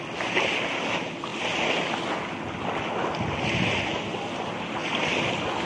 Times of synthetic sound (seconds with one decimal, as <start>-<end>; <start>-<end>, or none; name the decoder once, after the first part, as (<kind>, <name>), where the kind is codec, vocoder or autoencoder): none